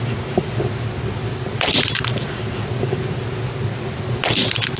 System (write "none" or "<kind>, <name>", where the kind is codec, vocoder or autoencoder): none